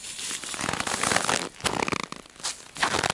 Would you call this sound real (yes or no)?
yes